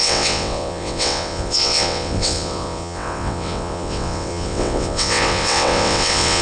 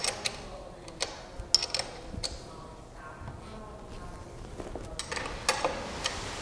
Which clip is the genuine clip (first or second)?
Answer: second